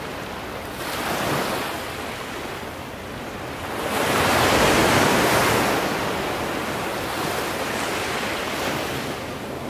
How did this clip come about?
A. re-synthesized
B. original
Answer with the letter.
B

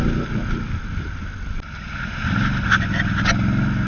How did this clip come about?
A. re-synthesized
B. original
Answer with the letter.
B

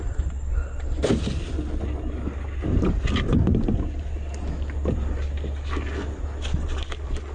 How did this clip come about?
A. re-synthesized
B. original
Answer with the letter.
B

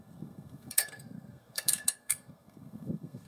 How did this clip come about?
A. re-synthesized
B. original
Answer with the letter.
A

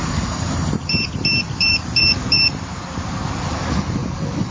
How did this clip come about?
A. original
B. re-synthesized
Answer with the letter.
A